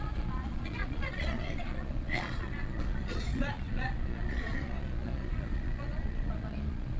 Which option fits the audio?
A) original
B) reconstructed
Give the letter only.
B